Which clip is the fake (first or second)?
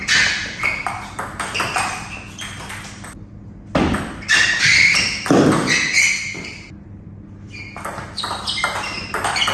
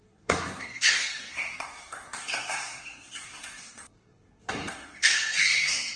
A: second